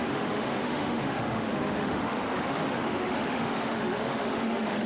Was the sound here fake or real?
fake